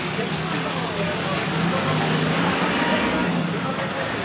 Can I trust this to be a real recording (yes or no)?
no